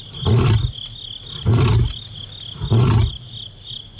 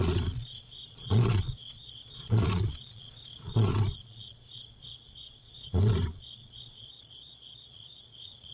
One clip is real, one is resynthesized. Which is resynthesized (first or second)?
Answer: second